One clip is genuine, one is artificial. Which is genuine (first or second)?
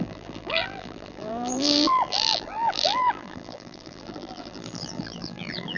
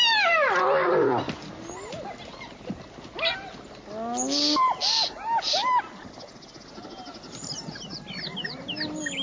second